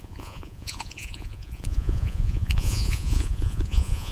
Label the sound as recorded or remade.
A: remade